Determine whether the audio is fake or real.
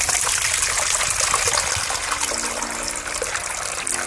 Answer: real